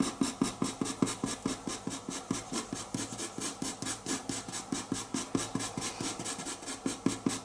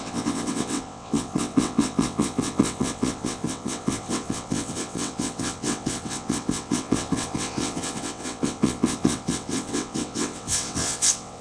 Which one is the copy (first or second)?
second